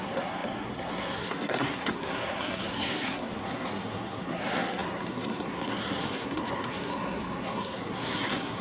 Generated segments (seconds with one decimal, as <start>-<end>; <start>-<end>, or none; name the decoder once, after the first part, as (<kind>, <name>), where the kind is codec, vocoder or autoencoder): 0.0-8.6 (codec, SNAC)